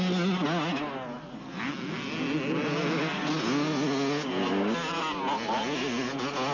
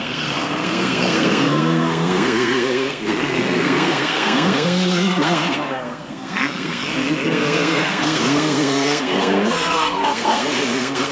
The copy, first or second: second